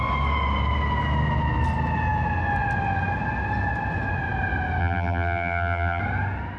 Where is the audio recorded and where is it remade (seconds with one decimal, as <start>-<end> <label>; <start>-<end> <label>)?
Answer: 0.0-4.8 recorded; 4.8-6.0 remade; 6.0-6.6 recorded